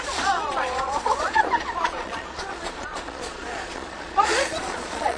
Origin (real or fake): fake